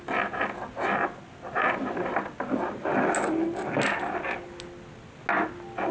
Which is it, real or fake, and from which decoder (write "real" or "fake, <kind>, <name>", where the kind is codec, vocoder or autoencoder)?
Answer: real